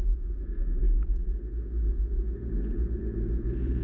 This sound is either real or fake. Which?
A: fake